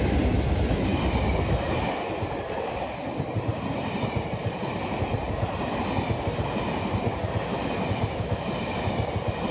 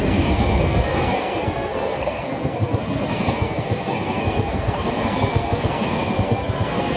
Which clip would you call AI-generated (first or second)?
second